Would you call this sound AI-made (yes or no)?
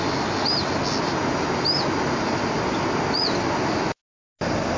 no